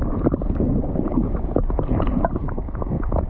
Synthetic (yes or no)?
yes